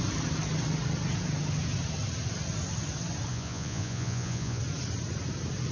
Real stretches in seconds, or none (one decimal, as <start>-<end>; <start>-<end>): 0.0-3.3; 4.6-5.7